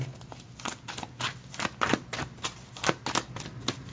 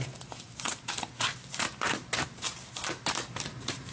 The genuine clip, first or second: first